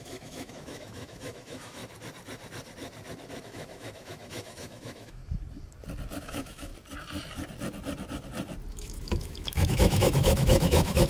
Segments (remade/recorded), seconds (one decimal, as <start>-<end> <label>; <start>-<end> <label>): 0.0-1.8 remade; 1.8-3.4 recorded; 3.4-5.2 remade; 5.2-6.2 recorded; 6.2-6.7 remade; 6.7-8.7 recorded; 8.7-11.1 remade